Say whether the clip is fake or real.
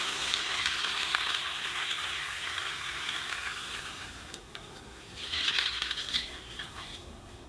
fake